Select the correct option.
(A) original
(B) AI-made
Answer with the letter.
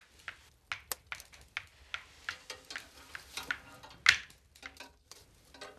A